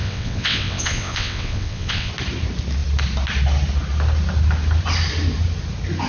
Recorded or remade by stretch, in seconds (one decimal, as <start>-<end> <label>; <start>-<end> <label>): 0.0-2.1 remade; 2.1-6.1 recorded